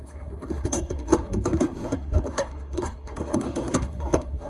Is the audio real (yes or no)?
no